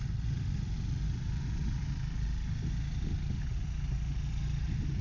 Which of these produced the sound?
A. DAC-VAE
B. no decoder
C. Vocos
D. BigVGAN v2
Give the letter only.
B